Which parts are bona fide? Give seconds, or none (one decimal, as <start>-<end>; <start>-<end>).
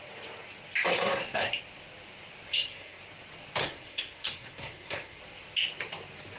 0.0-0.9; 1.6-2.5; 3.0-3.6; 5.2-6.4